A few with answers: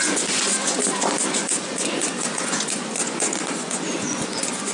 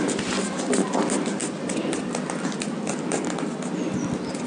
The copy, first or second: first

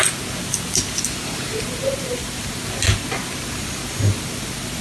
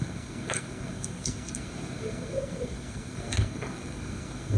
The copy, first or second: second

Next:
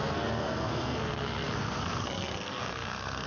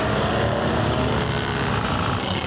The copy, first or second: first